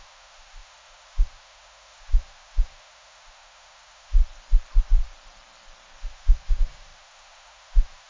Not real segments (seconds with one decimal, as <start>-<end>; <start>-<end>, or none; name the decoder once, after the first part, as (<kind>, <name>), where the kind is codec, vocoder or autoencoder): 0.0-4.2 (autoencoder, DAC-VAE); 6.0-8.1